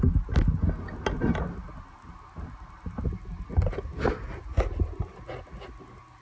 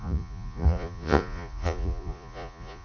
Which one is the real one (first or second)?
first